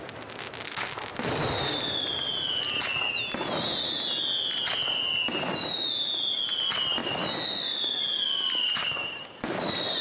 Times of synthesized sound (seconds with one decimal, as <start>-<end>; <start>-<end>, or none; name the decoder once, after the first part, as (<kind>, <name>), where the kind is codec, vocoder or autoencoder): none